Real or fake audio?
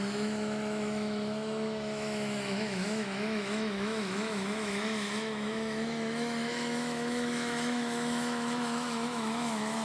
fake